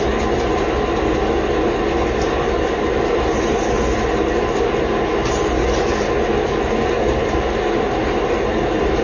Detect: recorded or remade recorded